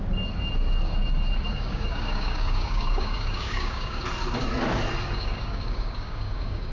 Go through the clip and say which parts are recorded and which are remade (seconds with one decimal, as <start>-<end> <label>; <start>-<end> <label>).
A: 0.0-1.5 recorded; 1.5-4.0 remade; 4.0-5.1 recorded; 5.1-6.7 remade